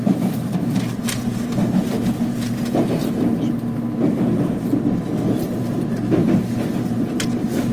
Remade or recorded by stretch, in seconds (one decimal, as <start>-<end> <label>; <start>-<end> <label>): 0.0-3.3 remade; 3.3-6.4 recorded; 6.4-7.7 remade